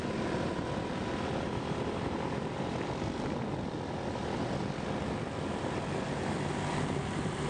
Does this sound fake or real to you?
real